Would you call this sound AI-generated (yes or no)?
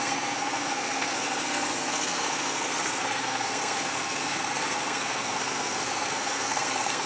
yes